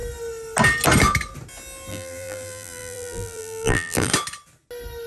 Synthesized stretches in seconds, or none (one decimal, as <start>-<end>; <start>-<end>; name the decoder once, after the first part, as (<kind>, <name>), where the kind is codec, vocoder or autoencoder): 1.9-4.1 (vocoder, BigVGAN v2)